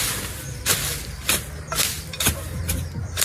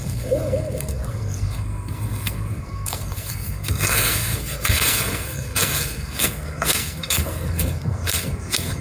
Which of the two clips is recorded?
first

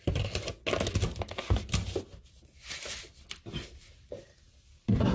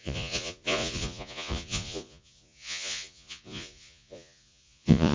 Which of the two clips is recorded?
first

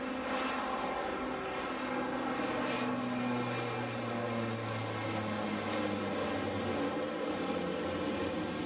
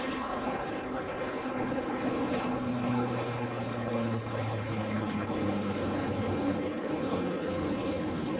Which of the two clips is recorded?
first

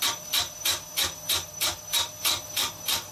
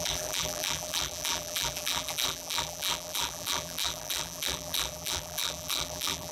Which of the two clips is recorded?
first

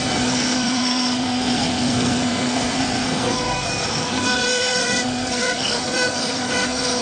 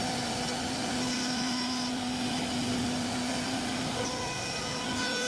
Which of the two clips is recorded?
second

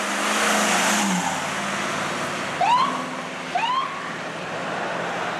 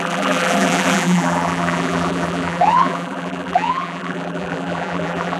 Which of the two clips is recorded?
first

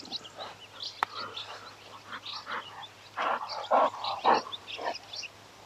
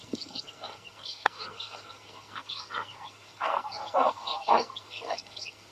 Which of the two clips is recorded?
first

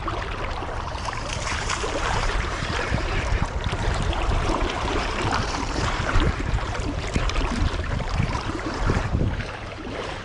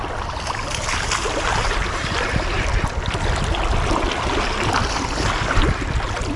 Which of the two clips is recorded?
second